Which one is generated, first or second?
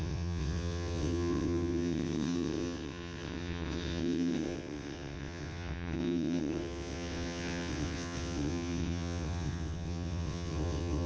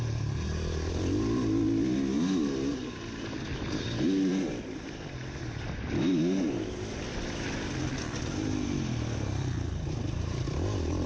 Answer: first